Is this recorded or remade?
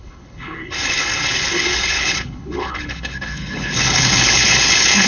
remade